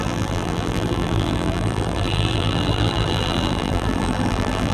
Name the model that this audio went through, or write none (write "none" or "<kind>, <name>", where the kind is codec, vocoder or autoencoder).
vocoder, BigVGAN v2